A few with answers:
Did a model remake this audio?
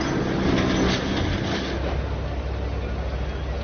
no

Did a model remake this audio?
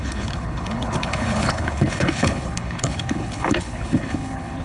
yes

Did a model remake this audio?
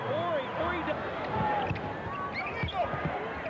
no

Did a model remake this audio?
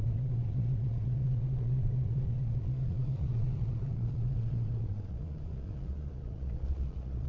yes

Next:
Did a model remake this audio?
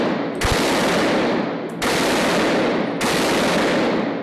no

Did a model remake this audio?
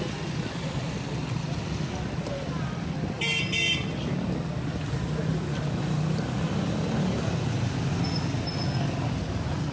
no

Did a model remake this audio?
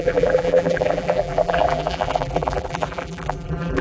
yes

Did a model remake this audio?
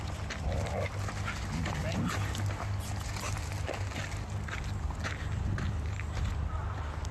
no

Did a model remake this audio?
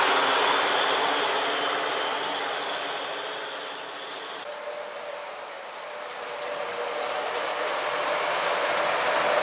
no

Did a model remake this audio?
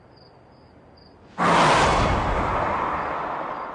no